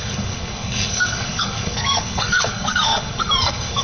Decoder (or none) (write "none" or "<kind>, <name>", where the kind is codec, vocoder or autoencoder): codec, SNAC